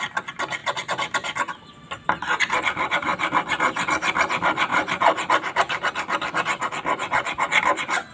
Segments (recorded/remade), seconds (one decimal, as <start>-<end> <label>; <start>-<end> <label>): 0.0-4.7 recorded; 4.7-5.3 remade; 5.3-8.1 recorded

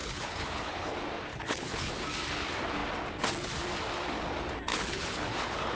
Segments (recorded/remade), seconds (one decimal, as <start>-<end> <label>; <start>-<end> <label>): 0.0-0.9 remade; 0.9-1.3 recorded; 1.3-1.9 remade; 1.9-4.7 recorded; 4.7-5.8 remade

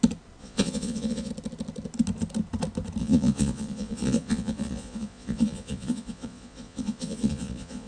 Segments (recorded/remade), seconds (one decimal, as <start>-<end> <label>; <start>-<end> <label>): 0.0-0.4 recorded; 0.4-1.3 remade; 1.3-3.0 recorded; 3.0-7.9 remade

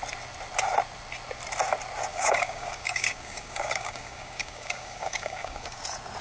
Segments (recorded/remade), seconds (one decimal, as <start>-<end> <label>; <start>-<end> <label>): 0.0-2.1 recorded; 2.1-5.8 remade; 5.8-6.2 recorded

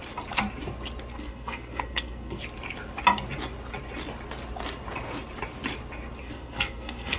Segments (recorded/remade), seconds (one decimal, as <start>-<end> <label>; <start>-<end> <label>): 0.0-1.1 recorded; 1.1-2.4 remade; 2.4-6.2 recorded; 6.2-7.2 remade